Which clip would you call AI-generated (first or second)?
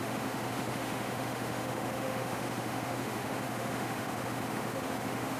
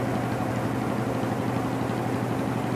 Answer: first